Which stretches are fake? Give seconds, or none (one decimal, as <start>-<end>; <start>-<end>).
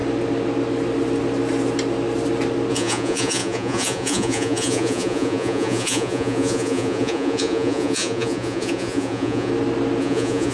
2.7-9.5; 10.0-10.5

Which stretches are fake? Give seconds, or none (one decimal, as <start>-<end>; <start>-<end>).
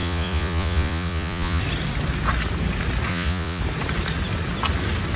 0.0-1.6; 3.1-3.6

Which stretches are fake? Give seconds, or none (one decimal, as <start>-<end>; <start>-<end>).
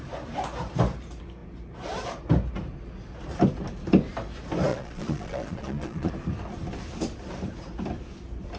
4.7-6.1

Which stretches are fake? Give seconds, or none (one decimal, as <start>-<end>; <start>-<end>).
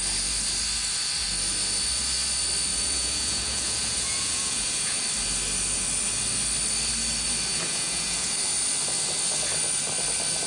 2.7-5.0; 7.5-8.3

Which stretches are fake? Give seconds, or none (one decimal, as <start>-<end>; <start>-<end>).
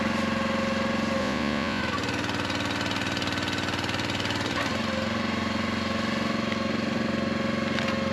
1.2-1.8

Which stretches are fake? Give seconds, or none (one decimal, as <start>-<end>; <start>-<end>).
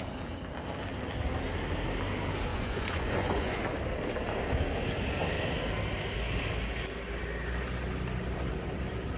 2.5-3.6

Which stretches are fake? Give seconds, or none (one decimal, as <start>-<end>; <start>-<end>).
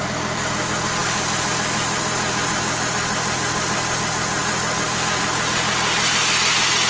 none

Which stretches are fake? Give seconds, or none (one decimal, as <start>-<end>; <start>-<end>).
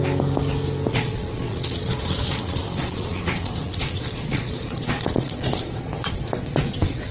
0.9-7.1